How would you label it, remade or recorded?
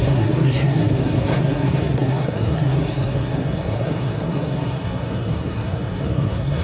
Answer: remade